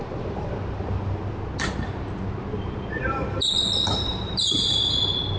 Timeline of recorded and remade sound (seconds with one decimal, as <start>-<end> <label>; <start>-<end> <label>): 0.0-4.1 recorded; 4.1-4.8 remade; 4.8-5.4 recorded